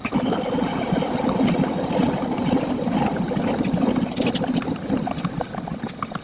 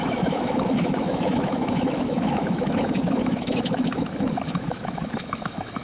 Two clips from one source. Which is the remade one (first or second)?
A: second